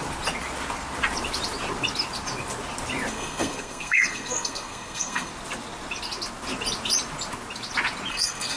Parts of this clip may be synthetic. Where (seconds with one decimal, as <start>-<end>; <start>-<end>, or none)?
3.1-5.3; 8.1-8.6